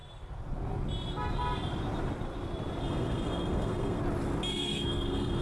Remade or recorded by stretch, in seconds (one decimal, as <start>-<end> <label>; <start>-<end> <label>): 0.0-2.8 recorded; 2.8-4.0 remade; 4.0-4.5 recorded; 4.5-5.4 remade